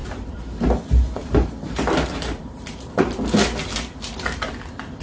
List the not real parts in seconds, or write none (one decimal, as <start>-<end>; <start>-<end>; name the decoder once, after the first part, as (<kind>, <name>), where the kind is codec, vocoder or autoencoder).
0.0-3.0 (vocoder, BigVGAN v2)